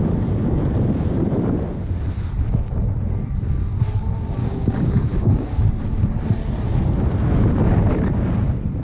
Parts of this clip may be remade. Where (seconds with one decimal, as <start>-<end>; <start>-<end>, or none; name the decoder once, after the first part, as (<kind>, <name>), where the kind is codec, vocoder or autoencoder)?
4.4-5.7 (codec, DAC)